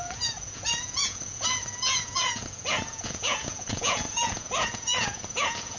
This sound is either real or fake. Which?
fake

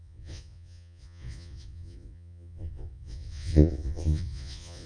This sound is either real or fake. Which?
fake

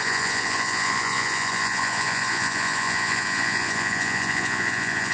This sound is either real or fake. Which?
fake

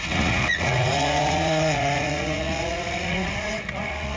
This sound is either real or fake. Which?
fake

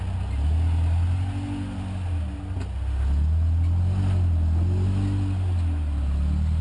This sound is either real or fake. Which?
real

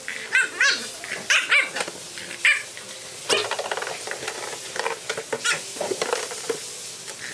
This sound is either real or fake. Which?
real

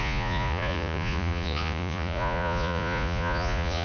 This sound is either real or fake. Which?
fake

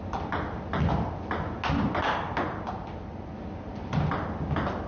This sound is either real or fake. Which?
real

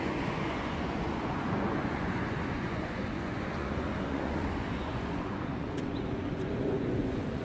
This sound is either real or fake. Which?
fake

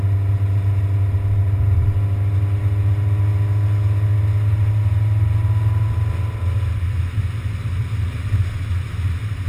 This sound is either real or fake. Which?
real